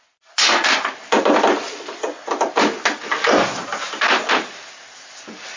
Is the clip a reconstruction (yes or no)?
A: no